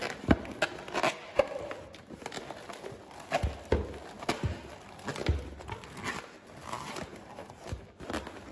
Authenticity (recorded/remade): recorded